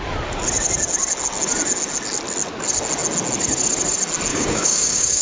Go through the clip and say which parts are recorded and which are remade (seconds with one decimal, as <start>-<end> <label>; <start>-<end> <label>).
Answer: 0.0-4.3 recorded; 4.3-5.2 remade